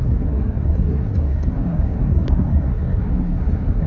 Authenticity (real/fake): fake